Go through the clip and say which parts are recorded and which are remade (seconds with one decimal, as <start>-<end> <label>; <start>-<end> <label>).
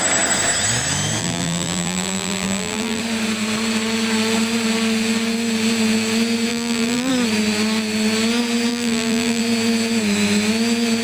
0.0-1.2 recorded; 1.2-3.0 remade; 3.0-6.5 recorded; 6.5-7.1 remade; 7.1-8.7 recorded; 8.7-9.4 remade; 9.4-11.0 recorded